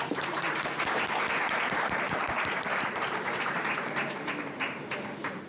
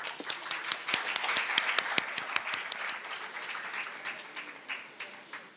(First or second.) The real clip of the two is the second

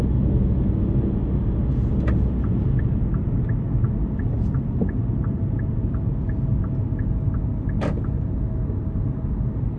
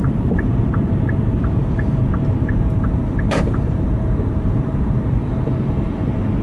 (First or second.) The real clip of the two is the first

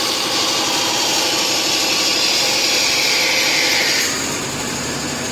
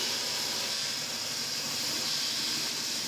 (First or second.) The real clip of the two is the first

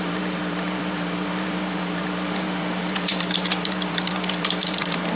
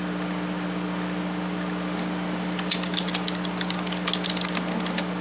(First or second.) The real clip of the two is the second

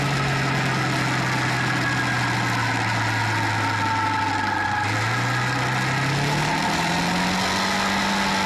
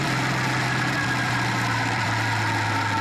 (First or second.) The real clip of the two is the first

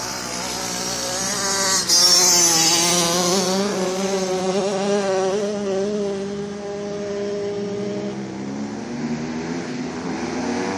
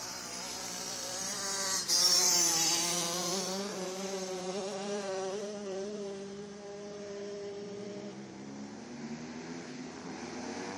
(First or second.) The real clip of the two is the first